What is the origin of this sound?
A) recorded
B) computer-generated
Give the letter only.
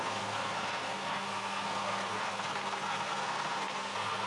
B